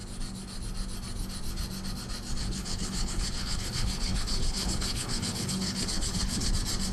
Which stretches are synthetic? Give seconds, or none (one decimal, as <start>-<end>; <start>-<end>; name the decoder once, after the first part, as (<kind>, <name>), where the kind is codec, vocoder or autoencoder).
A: 2.4-6.5 (codec, HILCodec)